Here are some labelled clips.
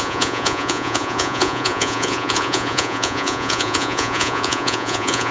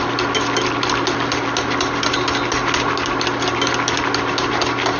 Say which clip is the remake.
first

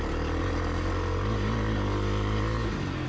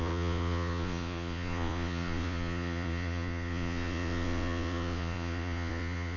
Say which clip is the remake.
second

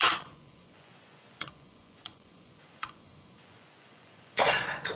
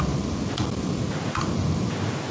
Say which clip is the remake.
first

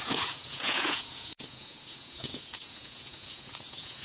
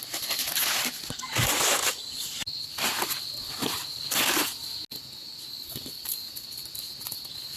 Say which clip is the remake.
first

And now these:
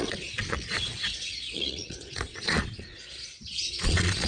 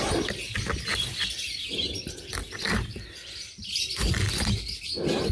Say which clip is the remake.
first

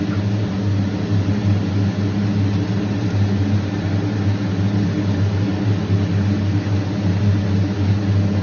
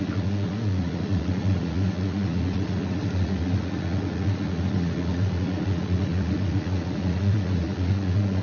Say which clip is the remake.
second